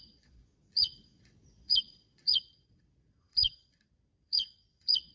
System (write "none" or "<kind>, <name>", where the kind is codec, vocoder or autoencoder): vocoder, Vocos